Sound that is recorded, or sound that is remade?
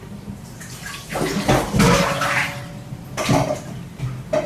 recorded